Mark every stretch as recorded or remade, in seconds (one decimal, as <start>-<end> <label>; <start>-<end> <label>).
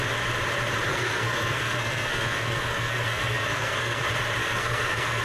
0.0-0.9 recorded; 0.9-4.0 remade; 4.0-4.4 recorded; 4.4-5.2 remade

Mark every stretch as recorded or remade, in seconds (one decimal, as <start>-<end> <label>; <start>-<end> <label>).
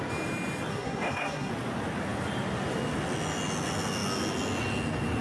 0.0-0.7 recorded; 0.7-1.5 remade; 1.5-5.2 recorded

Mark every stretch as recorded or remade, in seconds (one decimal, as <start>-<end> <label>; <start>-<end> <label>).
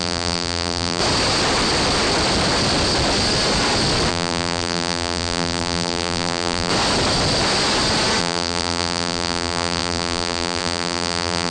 0.0-1.0 remade; 1.0-4.1 recorded; 4.1-6.7 remade; 6.7-8.2 recorded; 8.2-11.5 remade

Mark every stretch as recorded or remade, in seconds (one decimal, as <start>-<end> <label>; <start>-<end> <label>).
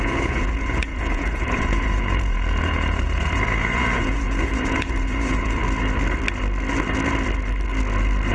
0.0-5.6 remade; 5.6-8.3 recorded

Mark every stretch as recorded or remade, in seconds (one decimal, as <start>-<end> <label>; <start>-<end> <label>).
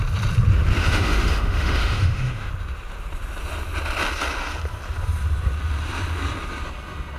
0.0-0.8 recorded; 0.8-2.5 remade; 2.5-7.2 recorded